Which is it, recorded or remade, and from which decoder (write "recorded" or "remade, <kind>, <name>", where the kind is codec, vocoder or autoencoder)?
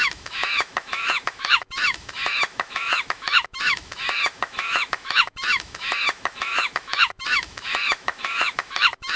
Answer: remade, autoencoder, DAC-VAE